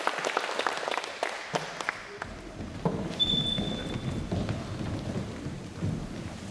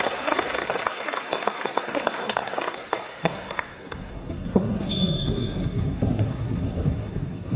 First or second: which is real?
first